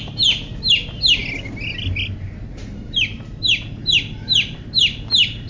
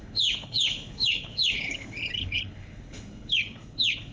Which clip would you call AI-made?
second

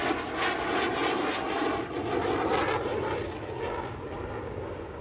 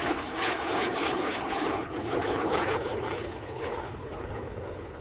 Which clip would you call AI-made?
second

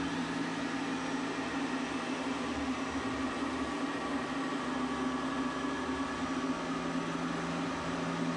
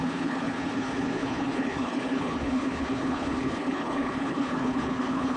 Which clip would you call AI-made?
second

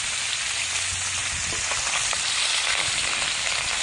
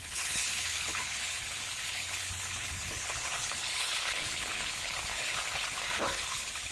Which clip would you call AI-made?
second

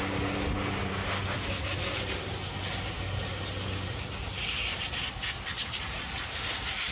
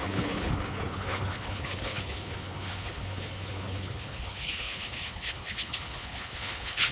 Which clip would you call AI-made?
second